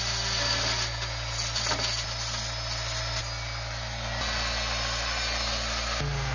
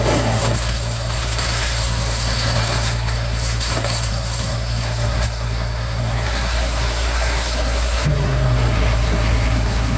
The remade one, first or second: second